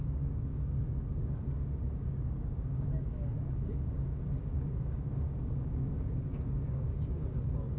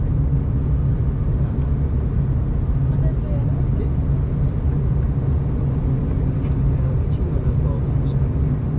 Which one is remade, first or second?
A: first